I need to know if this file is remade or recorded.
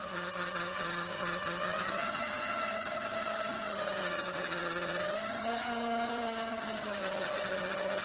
remade